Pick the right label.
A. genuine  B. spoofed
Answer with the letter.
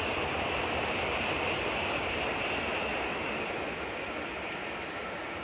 A